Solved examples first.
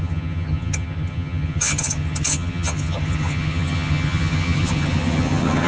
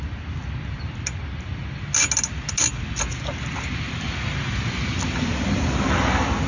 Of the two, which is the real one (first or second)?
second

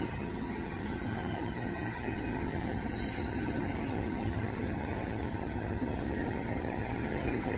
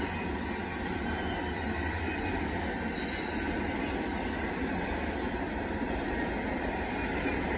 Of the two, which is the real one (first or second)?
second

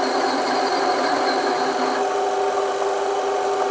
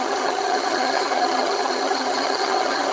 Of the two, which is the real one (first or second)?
first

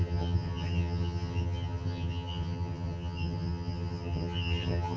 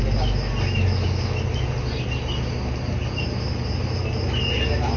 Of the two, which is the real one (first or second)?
second